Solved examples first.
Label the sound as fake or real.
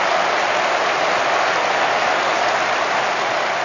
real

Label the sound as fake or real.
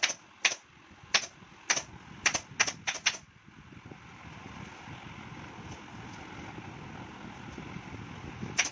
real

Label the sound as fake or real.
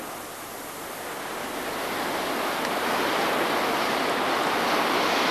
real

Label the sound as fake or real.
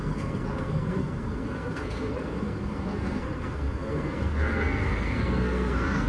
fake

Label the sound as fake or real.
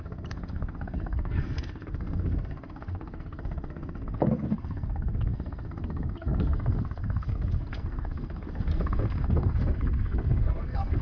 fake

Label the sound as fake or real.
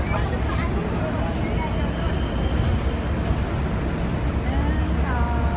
real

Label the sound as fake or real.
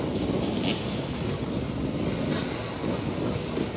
real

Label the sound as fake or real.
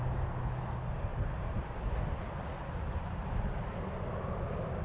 real